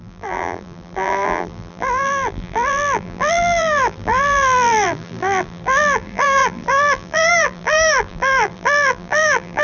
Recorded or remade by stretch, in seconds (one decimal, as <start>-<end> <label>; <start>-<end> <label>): 0.0-9.6 remade